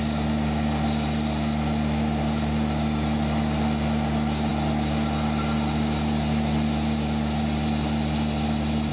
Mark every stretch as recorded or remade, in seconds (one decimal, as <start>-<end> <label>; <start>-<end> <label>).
0.0-8.9 recorded